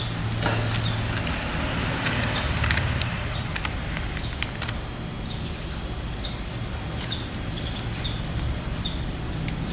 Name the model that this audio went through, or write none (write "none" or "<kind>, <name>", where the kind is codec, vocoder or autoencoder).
none